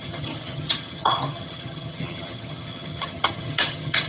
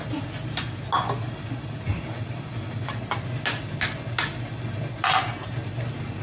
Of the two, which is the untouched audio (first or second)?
second